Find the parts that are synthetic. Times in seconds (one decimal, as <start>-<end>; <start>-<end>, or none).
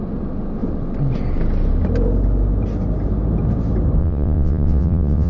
4.0-5.3